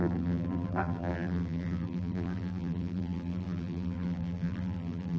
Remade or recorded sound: remade